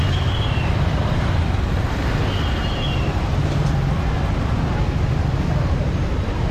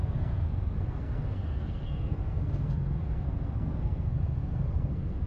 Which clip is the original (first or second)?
first